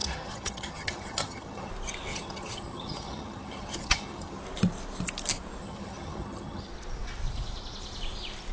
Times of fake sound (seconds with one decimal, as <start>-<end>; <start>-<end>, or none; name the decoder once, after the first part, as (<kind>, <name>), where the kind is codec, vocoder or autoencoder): 0.0-1.7 (vocoder, HiFi-GAN); 2.1-4.4; 5.6-6.7